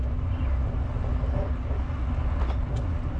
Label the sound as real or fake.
real